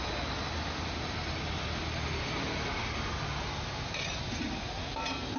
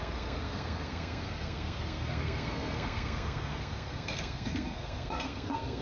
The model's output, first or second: second